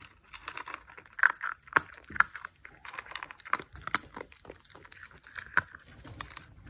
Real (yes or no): no